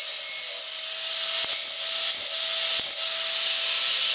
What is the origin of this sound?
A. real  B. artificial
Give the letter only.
A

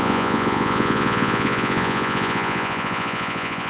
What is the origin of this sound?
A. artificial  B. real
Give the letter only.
A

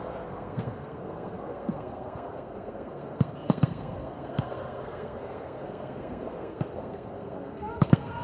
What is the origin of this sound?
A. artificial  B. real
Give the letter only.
A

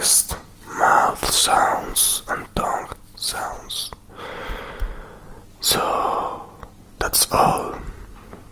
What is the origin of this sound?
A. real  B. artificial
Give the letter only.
A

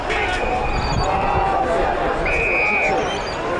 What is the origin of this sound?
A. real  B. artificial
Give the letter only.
A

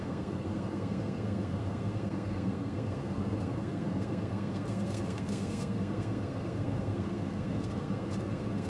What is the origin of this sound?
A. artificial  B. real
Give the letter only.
A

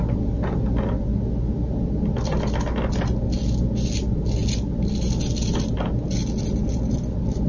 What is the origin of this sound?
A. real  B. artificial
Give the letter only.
A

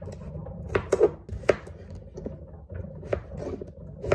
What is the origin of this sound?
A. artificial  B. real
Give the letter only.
B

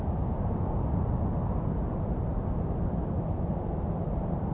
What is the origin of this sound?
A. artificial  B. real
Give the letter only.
B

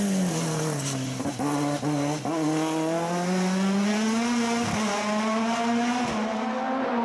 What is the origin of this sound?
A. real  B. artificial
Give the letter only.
A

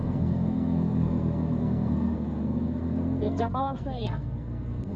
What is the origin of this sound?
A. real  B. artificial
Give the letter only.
B